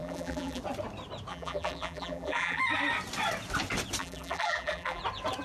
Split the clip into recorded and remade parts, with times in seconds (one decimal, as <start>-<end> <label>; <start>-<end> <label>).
0.0-0.6 remade; 0.6-1.3 recorded; 1.3-2.6 remade; 2.6-4.0 recorded; 4.0-5.0 remade; 5.0-5.4 recorded